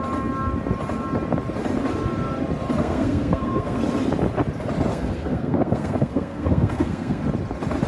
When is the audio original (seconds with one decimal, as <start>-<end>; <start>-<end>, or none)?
0.0-2.8; 3.8-4.9; 7.2-7.9